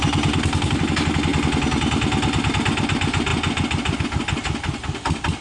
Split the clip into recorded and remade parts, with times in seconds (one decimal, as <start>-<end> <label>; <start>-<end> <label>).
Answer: 0.0-5.4 recorded

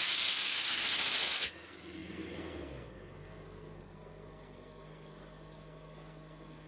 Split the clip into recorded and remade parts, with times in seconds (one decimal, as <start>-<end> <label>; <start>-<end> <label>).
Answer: 0.0-6.7 remade